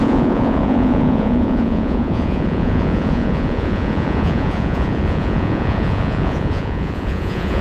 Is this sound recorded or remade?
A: remade